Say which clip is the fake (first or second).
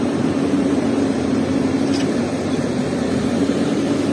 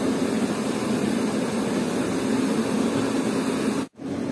first